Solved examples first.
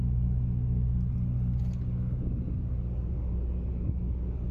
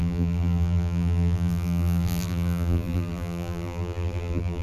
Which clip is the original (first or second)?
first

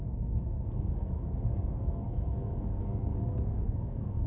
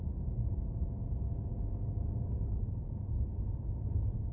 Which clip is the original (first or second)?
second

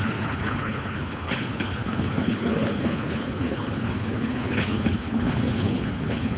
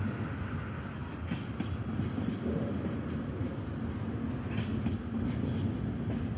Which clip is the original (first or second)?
second